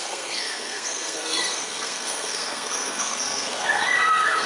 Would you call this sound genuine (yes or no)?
no